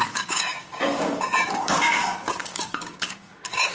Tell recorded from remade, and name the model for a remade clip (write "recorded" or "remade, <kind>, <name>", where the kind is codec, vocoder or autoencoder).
remade, codec, DAC